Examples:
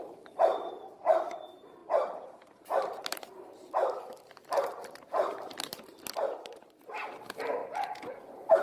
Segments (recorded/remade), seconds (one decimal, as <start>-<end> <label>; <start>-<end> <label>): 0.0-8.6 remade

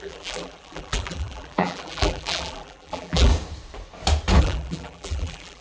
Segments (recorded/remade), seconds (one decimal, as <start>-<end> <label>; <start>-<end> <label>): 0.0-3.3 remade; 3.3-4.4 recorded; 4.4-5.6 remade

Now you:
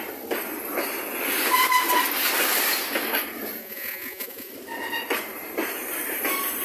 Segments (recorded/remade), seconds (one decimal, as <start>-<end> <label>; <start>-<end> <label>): 0.0-3.6 recorded; 3.6-4.5 remade; 4.5-6.6 recorded

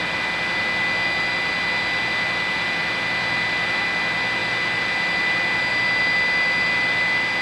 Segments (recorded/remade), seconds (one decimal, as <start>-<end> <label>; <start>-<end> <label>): 0.0-7.4 recorded